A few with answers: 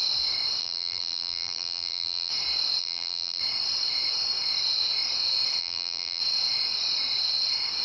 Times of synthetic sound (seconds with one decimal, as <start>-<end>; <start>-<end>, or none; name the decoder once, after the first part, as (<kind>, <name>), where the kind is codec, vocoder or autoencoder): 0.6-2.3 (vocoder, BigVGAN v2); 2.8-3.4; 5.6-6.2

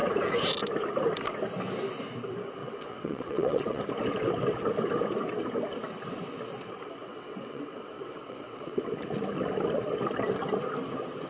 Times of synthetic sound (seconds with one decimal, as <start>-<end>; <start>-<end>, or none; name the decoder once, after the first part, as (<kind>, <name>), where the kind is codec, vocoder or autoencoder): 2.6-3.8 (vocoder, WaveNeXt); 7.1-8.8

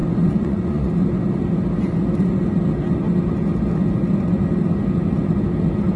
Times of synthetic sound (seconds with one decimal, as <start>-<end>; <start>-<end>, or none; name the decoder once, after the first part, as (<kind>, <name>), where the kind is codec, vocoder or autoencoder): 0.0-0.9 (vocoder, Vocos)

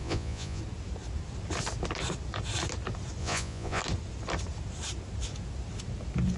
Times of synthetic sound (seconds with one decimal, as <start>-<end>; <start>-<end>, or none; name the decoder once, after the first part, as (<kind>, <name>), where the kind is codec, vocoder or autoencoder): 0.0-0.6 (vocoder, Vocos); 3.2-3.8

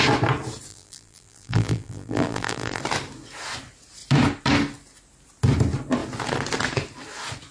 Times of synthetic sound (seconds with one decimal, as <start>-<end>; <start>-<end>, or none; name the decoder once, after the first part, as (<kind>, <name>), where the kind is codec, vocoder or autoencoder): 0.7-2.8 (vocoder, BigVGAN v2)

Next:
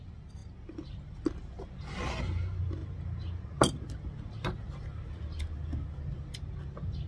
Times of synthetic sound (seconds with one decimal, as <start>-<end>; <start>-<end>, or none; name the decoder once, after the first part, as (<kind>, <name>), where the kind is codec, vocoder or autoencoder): none

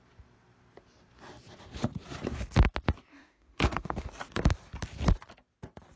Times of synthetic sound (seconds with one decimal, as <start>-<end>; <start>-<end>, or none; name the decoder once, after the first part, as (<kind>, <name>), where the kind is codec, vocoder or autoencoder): 3.1-4.1 (autoencoder, DAC-VAE)